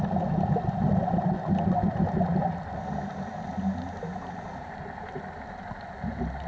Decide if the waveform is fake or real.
real